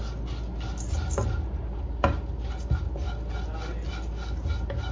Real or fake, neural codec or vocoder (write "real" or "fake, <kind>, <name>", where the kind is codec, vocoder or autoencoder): real